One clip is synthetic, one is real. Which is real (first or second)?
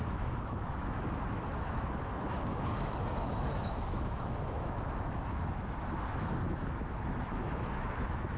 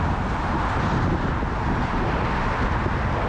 second